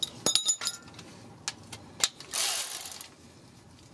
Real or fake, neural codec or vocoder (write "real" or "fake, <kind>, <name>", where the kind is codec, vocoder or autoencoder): real